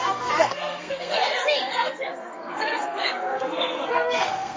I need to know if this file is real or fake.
fake